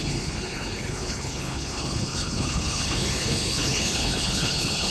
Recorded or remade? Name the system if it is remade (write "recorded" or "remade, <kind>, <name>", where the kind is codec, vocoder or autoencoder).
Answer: remade, codec, HILCodec